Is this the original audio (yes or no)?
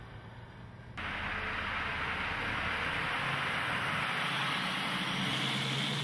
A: yes